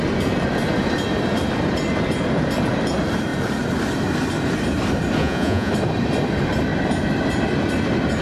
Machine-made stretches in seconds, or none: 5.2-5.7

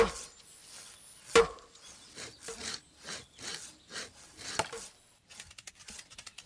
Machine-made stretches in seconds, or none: none